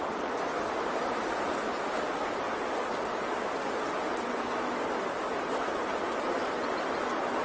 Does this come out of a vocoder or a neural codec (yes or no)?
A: yes